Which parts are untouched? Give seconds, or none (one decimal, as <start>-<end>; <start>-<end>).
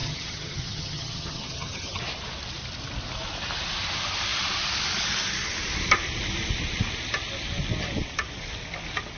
2.0-9.2